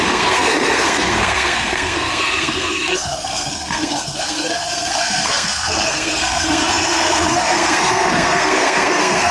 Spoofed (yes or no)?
yes